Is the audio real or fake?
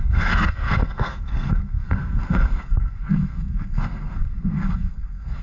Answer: fake